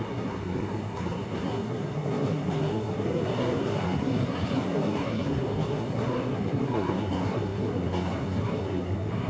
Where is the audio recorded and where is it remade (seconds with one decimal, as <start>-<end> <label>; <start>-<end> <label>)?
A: 0.0-9.3 remade